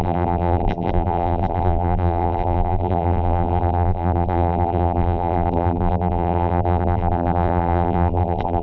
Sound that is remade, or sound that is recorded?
remade